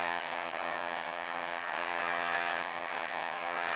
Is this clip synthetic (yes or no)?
yes